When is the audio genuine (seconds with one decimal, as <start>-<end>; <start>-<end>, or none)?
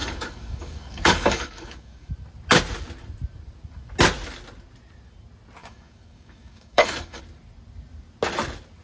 2.1-5.6; 7.2-8.8